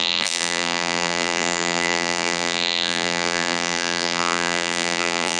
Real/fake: fake